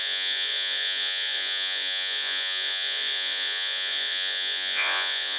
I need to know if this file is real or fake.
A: fake